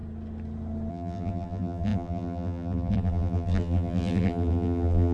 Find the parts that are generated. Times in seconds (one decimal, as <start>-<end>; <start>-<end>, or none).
0.9-5.1